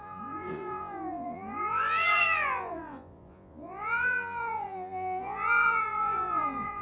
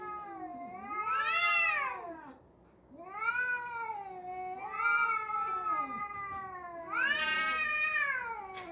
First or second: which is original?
second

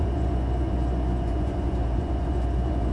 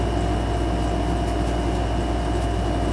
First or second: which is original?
second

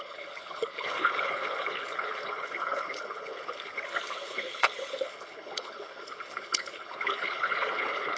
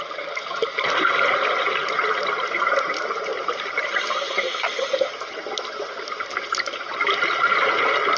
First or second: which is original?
second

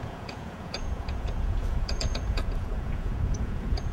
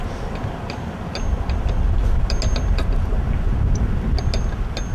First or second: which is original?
second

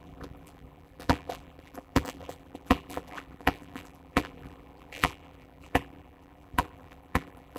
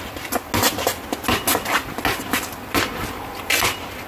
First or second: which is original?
second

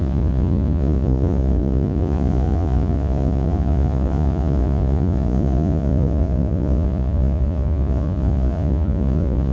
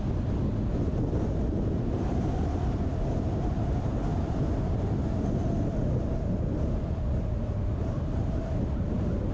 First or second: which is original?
second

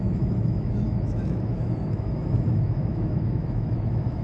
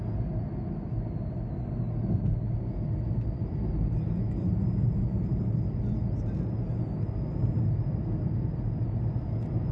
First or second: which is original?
second